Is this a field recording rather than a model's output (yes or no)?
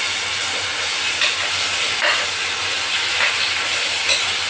yes